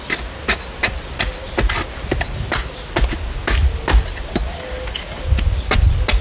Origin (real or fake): real